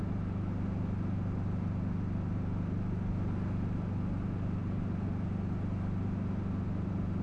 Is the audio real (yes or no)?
yes